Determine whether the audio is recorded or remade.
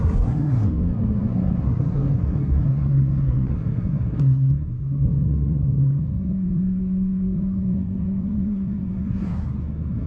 remade